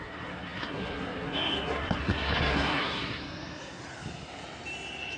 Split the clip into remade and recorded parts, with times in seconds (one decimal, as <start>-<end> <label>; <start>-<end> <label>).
0.0-3.8 remade; 3.8-5.2 recorded